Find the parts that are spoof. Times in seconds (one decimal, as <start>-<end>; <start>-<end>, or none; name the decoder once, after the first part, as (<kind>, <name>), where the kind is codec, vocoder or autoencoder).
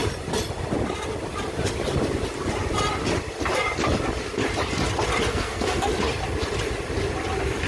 5.3-5.9 (codec, SNAC)